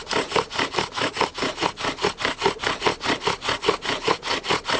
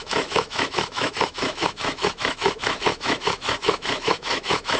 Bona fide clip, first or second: first